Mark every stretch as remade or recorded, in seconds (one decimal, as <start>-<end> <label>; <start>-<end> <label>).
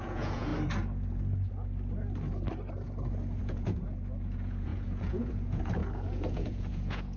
0.0-0.5 remade; 0.5-3.4 recorded; 3.4-7.2 remade